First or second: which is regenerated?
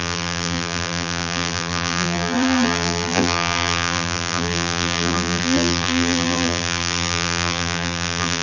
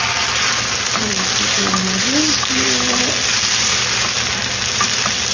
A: first